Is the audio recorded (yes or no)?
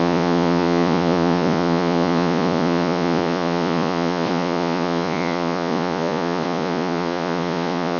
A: no